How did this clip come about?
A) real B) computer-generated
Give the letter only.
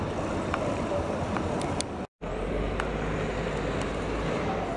A